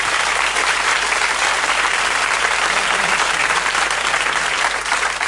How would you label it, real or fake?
fake